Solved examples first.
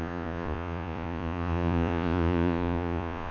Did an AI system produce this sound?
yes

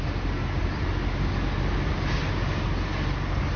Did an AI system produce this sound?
no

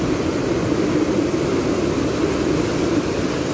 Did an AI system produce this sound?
no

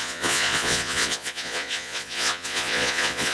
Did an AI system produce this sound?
yes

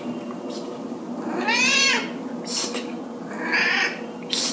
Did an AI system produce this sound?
no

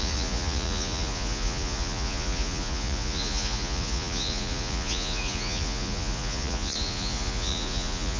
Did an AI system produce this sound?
yes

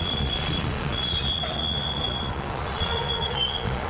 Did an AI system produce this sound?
yes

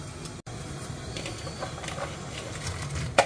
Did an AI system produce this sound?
no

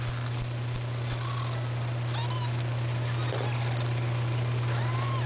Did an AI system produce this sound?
no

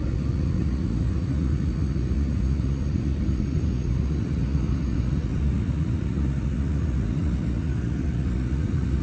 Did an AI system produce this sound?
yes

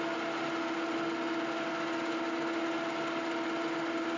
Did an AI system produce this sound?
no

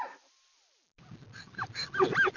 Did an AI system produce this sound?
no